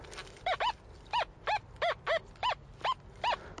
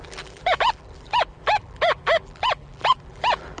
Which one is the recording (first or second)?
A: first